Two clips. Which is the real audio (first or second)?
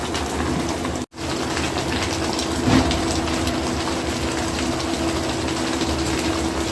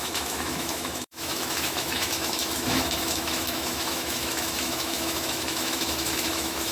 first